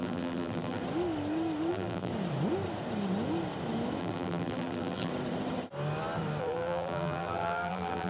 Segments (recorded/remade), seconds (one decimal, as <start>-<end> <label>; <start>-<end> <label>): 0.0-0.8 remade; 0.8-1.7 recorded; 1.7-2.1 remade; 2.1-4.0 recorded; 4.0-5.1 remade; 5.1-6.4 recorded; 6.4-8.1 remade